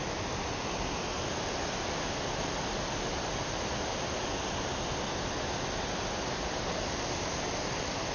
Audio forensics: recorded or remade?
recorded